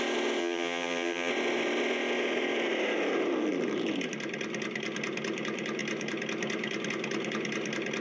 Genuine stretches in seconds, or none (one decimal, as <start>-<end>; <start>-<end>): 0.0-0.4; 1.3-8.0